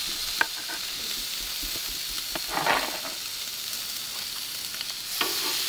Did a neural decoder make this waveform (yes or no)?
no